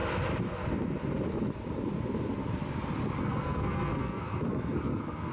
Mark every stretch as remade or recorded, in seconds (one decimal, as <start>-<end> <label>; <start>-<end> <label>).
0.0-3.2 recorded; 3.2-5.3 remade